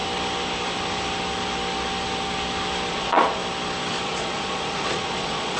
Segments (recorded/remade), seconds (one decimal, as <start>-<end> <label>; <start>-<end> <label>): 0.0-2.9 recorded; 2.9-3.4 remade; 3.4-4.0 recorded; 4.0-5.6 remade